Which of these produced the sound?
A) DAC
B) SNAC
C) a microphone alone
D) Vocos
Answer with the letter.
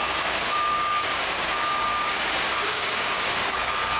A